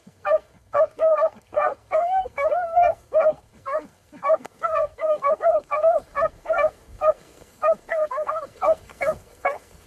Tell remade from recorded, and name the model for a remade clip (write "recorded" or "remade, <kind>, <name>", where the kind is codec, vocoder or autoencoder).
remade, codec, SNAC